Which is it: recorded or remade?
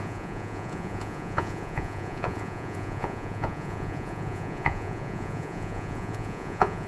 remade